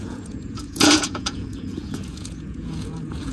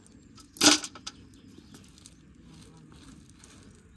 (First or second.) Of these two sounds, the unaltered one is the second